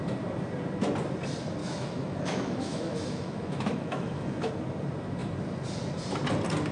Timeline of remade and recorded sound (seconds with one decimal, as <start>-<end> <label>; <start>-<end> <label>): 0.0-1.6 recorded; 1.6-4.5 remade; 4.5-6.7 recorded